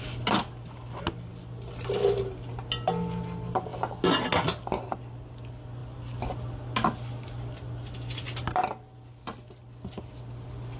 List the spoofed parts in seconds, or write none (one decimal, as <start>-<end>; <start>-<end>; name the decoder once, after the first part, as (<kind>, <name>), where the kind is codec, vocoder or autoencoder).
none